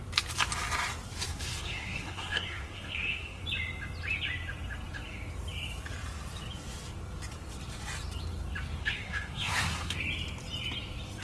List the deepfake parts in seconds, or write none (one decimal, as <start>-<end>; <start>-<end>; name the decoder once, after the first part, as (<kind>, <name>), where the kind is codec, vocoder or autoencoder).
1.3-3.4 (codec, SNAC); 8.8-10.0

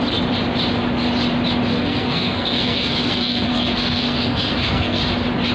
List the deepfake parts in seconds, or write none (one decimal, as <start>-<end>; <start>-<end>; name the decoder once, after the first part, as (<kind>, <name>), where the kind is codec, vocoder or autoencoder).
1.7-5.0 (codec, SNAC)

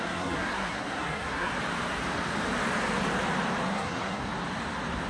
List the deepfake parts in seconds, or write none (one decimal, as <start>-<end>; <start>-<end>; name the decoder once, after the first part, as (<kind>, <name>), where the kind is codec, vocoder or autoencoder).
0.0-1.5 (codec, SNAC); 3.7-4.2

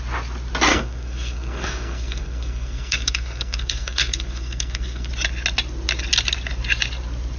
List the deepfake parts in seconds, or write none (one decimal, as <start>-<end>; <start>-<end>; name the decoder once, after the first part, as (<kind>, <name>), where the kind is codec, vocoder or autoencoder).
0.7-5.1 (codec, SNAC)

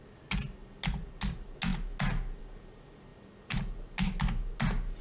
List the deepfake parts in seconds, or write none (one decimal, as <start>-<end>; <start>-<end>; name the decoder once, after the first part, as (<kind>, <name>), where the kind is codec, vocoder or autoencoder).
none

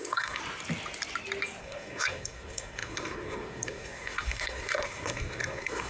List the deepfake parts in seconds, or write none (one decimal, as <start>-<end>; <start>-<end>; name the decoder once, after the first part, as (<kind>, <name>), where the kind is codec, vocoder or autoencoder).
0.0-0.4 (codec, SNAC); 1.6-5.9

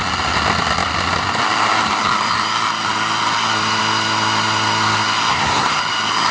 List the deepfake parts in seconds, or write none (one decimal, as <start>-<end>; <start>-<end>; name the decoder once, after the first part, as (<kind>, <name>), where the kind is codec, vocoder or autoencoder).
5.3-5.8 (codec, SNAC)

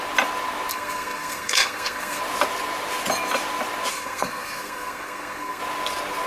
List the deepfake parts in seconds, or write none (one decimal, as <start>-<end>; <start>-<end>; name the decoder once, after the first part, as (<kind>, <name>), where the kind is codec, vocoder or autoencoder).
0.7-2.2 (codec, SNAC); 3.9-5.6